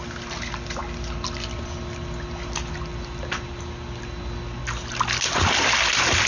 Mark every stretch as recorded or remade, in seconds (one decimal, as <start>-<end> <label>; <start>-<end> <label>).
0.0-6.3 recorded